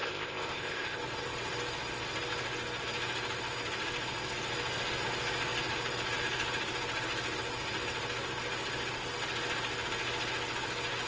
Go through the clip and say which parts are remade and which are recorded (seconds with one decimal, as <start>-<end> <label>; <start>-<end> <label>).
0.0-1.0 remade; 1.0-11.1 recorded